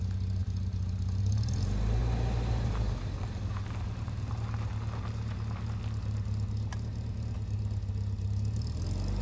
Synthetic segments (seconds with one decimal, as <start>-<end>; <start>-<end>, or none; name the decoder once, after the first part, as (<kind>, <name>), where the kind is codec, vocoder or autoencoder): 2.0-4.3 (vocoder, BigVGAN v2)

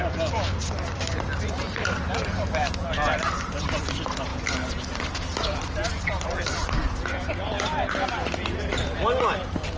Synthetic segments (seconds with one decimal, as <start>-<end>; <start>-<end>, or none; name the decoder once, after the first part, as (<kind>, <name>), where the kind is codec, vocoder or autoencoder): none

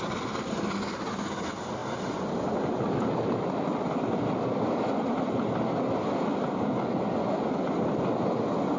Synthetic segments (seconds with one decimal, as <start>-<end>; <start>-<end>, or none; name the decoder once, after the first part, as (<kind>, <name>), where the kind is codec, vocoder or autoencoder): 1.8-6.7 (vocoder, BigVGAN v2)

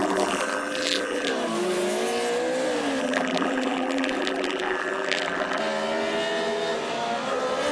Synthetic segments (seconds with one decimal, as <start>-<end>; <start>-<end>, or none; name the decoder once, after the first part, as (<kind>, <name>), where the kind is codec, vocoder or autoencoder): 0.0-1.3 (vocoder, BigVGAN v2); 3.0-5.6

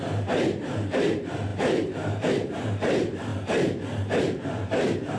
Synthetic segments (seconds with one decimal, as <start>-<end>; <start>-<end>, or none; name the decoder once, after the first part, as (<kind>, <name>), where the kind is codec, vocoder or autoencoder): 0.0-3.3 (vocoder, BigVGAN v2); 4.2-5.2